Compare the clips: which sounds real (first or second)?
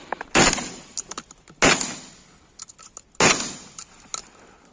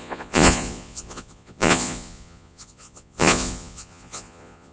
first